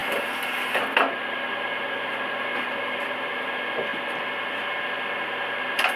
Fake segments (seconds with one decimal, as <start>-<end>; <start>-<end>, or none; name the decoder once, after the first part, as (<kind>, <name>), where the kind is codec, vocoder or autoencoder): 1.2-2.5 (vocoder, BigVGAN v2); 3.3-3.9; 4.8-6.0